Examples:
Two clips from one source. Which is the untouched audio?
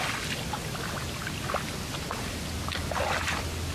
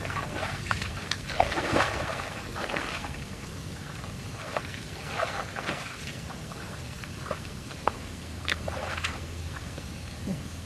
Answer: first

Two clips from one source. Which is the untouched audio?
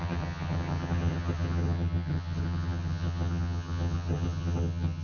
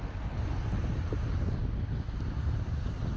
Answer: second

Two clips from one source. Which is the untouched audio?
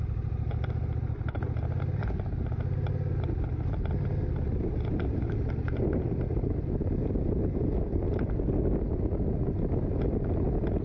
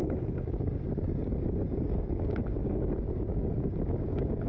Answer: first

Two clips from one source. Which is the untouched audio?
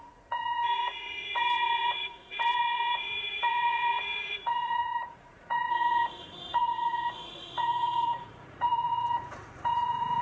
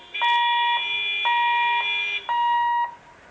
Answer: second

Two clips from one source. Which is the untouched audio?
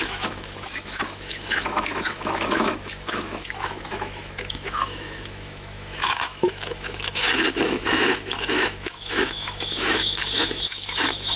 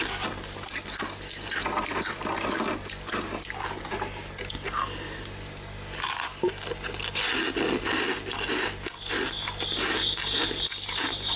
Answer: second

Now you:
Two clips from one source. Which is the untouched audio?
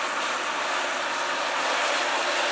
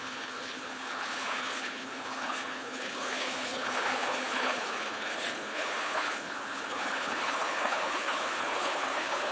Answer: first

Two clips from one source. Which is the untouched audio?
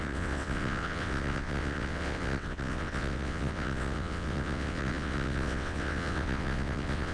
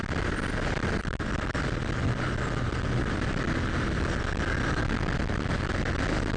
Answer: second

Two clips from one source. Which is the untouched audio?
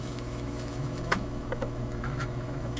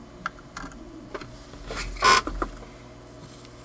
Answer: second